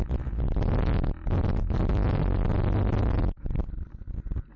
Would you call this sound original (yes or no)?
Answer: yes